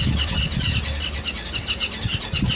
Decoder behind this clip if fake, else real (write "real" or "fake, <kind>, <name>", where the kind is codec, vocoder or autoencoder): real